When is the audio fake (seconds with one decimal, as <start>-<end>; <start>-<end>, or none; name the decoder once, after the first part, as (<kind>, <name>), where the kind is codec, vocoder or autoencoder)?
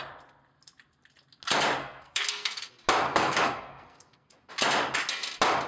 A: 1.8-2.7 (codec, SNAC); 3.1-4.3